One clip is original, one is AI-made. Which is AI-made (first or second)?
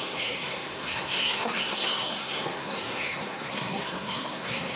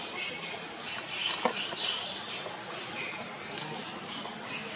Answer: first